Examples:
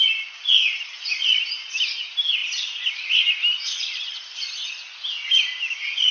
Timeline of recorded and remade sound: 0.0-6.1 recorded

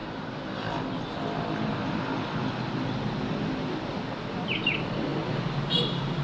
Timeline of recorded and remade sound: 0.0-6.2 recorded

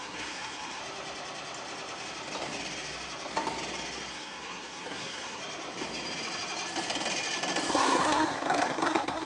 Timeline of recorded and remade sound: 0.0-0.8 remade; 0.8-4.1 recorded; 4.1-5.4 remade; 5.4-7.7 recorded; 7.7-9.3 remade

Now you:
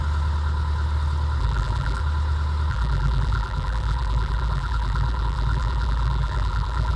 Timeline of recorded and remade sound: 0.0-1.4 recorded; 1.4-2.0 remade; 2.0-2.7 recorded; 2.7-7.0 remade

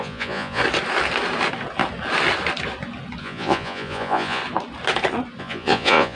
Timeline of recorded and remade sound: 0.0-0.6 remade; 0.6-3.2 recorded; 3.2-4.4 remade; 4.4-5.4 recorded; 5.4-6.2 remade

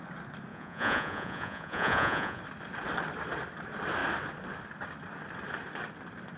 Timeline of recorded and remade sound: 0.0-0.5 recorded; 0.5-2.4 remade; 2.4-6.4 recorded

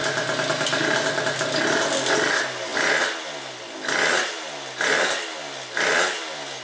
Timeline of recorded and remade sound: 0.0-6.6 recorded